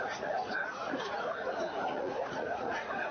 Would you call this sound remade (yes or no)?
yes